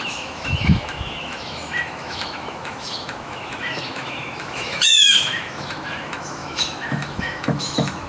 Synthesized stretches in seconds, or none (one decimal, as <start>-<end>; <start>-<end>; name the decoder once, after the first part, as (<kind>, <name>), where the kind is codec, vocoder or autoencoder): 0.0-8.1 (autoencoder, DAC-VAE)